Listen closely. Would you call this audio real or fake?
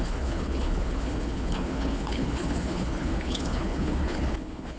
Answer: fake